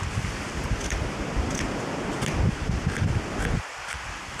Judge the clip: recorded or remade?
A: recorded